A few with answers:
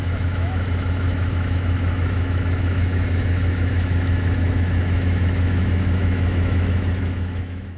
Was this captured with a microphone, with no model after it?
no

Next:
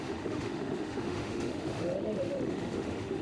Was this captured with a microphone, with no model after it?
no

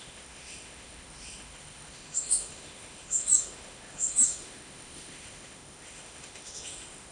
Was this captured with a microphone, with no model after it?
no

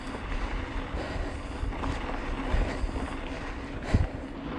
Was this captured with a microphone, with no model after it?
yes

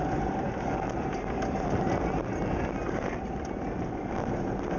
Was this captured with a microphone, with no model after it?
yes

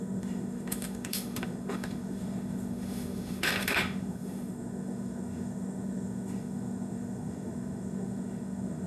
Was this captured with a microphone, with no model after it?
no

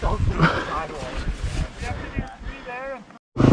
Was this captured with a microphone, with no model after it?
yes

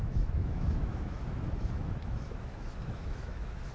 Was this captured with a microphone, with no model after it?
no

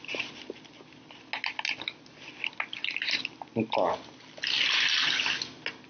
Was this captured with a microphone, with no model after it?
yes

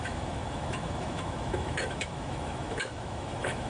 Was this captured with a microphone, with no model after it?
no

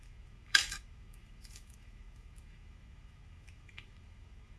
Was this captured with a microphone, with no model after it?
no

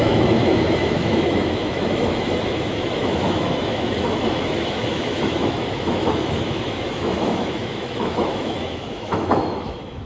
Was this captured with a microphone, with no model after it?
no